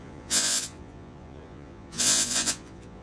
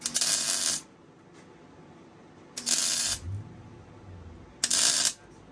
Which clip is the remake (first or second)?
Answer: first